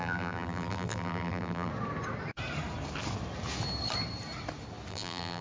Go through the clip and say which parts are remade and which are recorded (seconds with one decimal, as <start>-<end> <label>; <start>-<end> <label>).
0.0-1.7 remade; 1.7-4.9 recorded; 4.9-5.4 remade